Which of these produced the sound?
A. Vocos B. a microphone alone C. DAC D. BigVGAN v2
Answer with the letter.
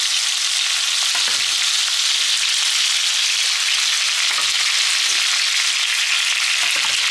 B